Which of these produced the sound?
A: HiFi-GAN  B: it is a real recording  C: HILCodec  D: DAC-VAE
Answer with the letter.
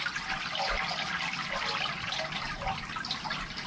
B